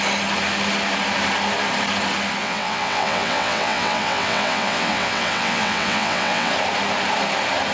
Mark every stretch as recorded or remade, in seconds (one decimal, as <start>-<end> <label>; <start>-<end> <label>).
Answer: 0.0-2.4 recorded; 2.4-6.5 remade; 6.5-7.7 recorded